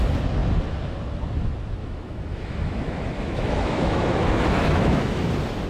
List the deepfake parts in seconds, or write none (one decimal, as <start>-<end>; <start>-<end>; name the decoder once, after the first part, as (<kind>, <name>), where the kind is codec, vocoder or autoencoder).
1.8-5.2 (autoencoder, DAC-VAE)